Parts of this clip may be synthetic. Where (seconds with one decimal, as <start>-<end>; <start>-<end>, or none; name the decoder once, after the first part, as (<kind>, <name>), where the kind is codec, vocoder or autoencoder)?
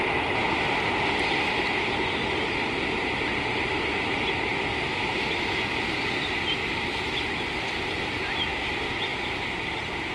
none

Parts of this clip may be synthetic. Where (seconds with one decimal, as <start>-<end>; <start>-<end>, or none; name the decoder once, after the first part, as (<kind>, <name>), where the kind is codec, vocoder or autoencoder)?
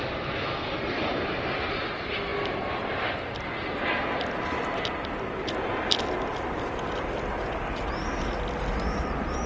none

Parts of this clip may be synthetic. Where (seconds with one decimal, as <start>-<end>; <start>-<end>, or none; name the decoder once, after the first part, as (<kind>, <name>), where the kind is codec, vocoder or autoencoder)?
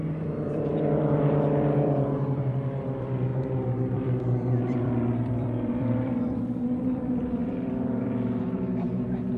0.0-9.4 (vocoder, BigVGAN v2)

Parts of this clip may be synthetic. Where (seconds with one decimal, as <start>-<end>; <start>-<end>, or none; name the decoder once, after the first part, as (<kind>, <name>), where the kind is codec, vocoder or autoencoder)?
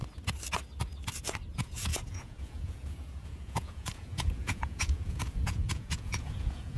1.5-6.8 (vocoder, Vocos)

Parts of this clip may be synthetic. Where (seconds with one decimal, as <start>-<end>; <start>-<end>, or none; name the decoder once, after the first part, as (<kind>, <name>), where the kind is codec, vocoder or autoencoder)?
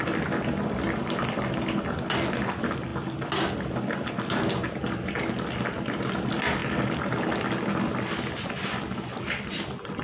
none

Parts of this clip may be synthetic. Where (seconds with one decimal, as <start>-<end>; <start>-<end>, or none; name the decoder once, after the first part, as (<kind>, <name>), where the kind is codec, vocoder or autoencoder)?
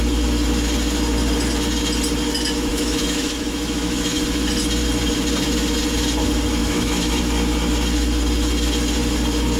2.7-4.2 (autoencoder, DAC-VAE); 6.6-7.2